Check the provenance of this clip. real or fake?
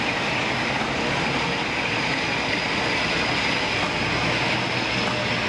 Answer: real